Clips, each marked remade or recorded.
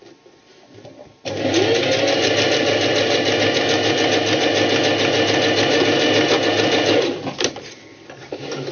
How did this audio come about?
recorded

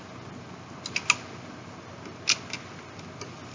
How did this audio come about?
recorded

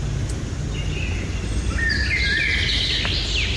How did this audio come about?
recorded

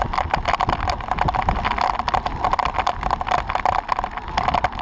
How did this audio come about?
recorded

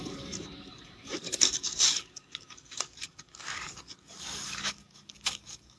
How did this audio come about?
remade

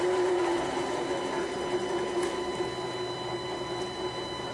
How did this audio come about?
recorded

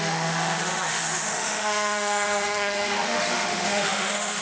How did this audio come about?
remade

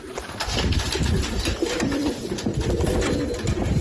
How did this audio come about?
recorded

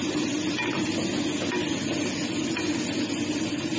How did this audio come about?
recorded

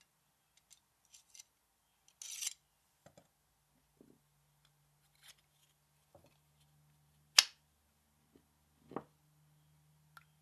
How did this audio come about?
recorded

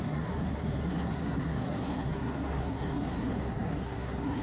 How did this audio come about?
remade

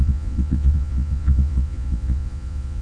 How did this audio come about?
remade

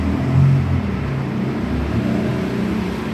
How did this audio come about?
recorded